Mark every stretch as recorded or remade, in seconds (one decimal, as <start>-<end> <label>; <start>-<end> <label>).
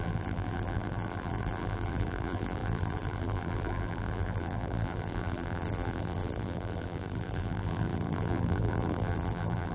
0.0-9.7 remade